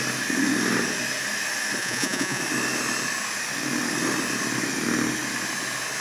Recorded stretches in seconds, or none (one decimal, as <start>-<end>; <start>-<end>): 0.0-1.8; 2.4-6.0